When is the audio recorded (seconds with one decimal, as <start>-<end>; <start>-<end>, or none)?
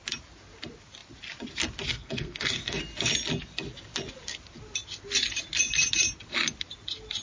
0.0-1.9; 2.8-7.2